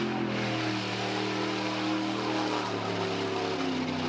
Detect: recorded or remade recorded